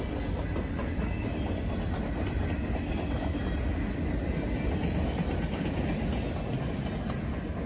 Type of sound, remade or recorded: recorded